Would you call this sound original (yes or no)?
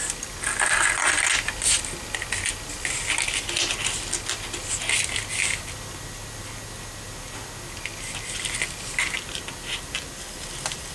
yes